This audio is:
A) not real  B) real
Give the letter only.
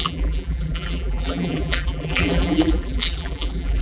A